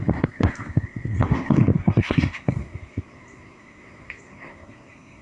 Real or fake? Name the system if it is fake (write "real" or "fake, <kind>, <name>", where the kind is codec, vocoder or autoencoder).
fake, codec, SNAC